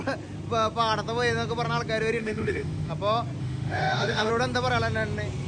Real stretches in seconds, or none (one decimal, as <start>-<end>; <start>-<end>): 0.0-2.2; 2.9-3.4; 4.3-5.5